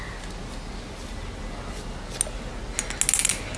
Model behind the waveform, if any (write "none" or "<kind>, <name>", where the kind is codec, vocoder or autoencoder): none